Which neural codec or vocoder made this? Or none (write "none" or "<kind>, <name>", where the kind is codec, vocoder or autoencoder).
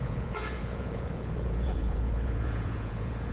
vocoder, Vocos